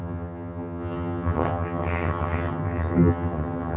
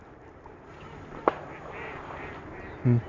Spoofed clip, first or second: first